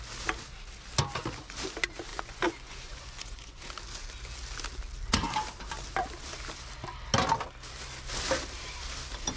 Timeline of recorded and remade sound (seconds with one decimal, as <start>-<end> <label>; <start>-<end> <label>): 0.0-2.1 recorded; 2.1-3.6 remade; 3.6-9.4 recorded